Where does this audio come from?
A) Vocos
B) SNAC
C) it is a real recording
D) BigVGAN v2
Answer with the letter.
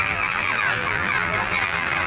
D